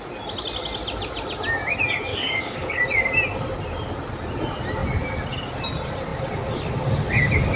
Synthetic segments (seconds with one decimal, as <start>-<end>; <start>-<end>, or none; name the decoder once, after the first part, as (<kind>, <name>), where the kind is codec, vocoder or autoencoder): 2.1-2.7 (codec, DAC)